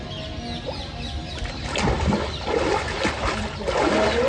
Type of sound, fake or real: real